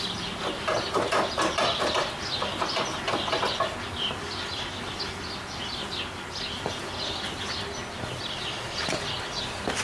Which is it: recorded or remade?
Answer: recorded